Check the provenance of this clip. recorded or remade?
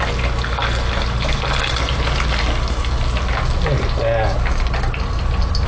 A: recorded